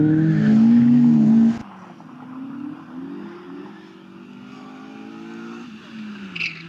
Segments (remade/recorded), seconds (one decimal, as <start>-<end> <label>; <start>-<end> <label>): 0.0-6.7 recorded